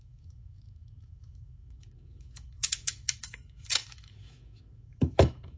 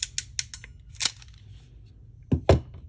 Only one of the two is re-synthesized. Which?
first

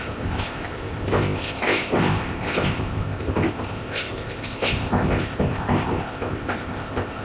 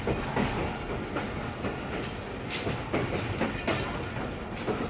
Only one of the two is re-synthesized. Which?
first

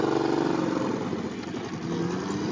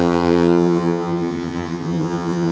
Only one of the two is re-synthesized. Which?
second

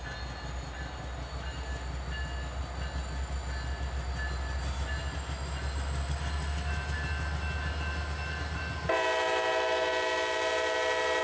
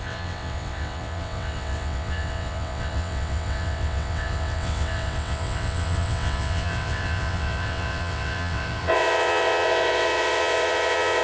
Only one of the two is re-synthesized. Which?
second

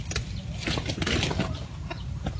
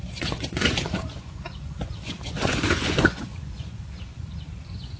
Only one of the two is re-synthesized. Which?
second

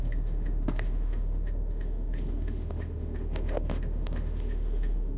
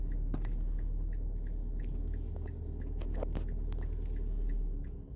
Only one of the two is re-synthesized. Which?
first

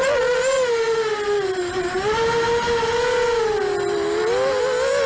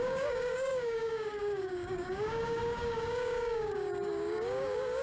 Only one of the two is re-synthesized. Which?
second